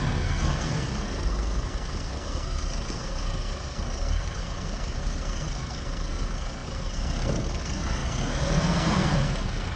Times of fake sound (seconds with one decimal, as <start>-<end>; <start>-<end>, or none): 0.0-9.8